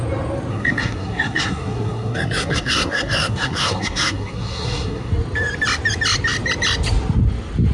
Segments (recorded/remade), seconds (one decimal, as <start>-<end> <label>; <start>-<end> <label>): 0.0-0.5 recorded; 0.5-5.1 remade; 5.1-7.7 recorded